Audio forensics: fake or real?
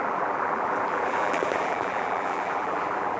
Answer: fake